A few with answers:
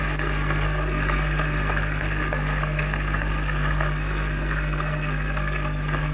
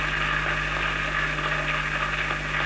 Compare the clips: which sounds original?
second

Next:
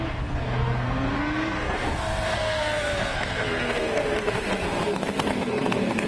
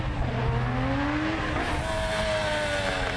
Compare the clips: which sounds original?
second